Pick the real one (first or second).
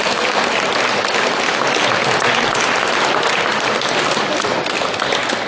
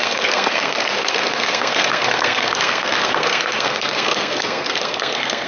first